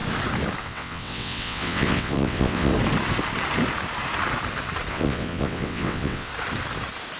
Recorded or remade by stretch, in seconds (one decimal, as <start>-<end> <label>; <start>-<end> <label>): 0.0-0.6 recorded; 0.6-2.7 remade; 2.7-4.9 recorded; 4.9-6.3 remade; 6.3-7.2 recorded